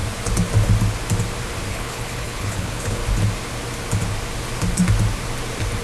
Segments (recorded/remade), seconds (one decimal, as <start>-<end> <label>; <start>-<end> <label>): 0.0-1.7 recorded; 1.7-3.0 remade; 3.0-5.8 recorded

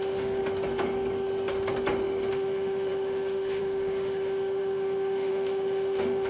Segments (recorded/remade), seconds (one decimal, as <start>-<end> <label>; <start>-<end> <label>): 0.0-0.4 remade; 0.4-2.3 recorded; 2.3-6.3 remade

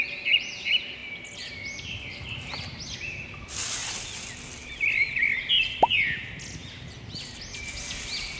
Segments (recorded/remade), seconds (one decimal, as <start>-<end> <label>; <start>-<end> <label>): 0.0-8.4 recorded